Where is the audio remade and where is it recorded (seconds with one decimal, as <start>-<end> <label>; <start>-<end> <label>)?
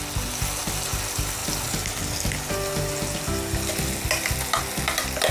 0.0-5.3 recorded